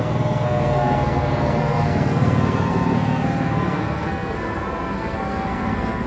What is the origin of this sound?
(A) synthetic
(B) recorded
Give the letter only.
A